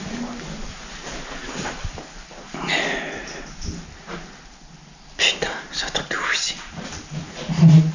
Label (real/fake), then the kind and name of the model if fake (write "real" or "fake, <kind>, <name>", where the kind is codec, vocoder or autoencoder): real